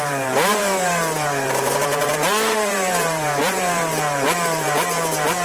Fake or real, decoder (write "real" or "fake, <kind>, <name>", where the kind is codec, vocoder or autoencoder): fake, vocoder, BigVGAN v2